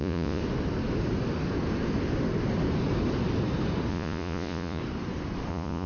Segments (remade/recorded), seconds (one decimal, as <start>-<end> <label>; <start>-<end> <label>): 0.0-0.4 remade; 0.4-3.9 recorded; 3.9-4.8 remade; 4.8-5.5 recorded; 5.5-5.9 remade